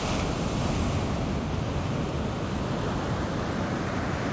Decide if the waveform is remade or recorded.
recorded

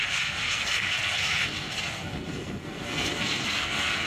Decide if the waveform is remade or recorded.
remade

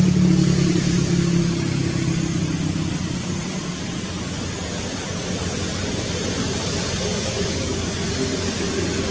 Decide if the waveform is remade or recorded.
recorded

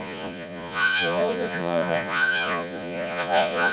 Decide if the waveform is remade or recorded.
remade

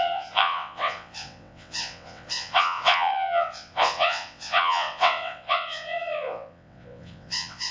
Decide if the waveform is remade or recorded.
remade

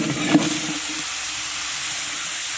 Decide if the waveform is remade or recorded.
recorded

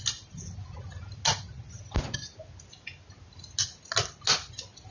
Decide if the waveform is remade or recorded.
recorded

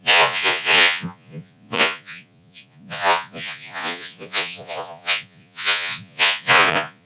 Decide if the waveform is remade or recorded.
remade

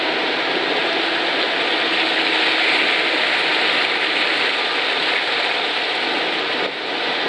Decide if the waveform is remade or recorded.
recorded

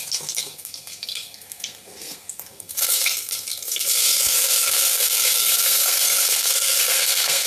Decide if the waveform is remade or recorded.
remade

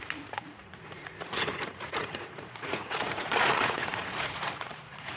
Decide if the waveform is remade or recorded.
remade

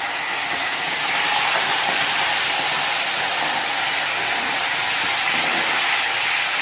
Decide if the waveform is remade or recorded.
recorded